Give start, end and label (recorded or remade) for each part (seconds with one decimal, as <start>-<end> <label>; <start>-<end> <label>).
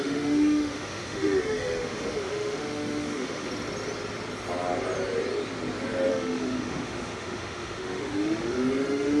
0.0-3.5 remade; 3.5-6.1 recorded; 6.1-9.2 remade